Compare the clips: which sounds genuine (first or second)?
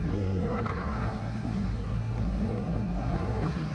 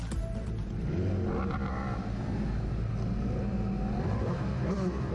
second